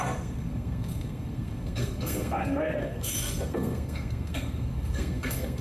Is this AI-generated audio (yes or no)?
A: yes